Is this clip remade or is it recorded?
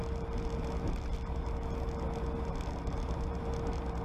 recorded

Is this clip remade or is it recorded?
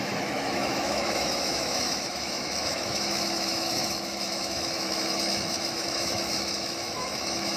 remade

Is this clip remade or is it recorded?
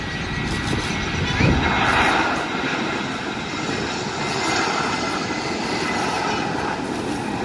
recorded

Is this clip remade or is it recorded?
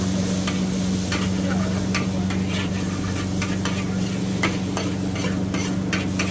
recorded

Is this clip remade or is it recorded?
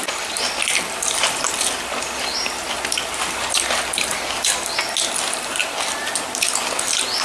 recorded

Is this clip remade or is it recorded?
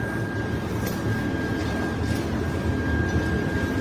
recorded